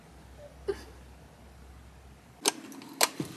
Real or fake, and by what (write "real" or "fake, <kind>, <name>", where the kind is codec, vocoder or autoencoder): real